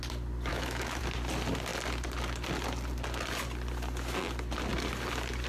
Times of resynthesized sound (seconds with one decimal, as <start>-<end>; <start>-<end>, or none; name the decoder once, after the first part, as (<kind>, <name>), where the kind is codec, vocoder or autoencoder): 0.5-1.0 (autoencoder, DAC-VAE)